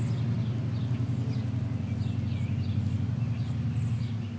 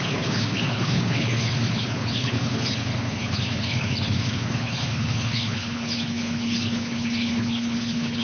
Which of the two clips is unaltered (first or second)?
first